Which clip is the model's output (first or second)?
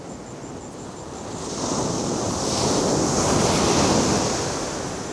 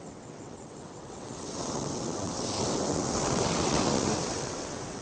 second